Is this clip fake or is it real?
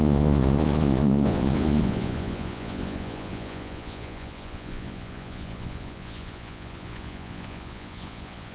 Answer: fake